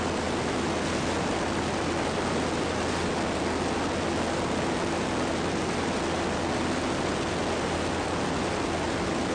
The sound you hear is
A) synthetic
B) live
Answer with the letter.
B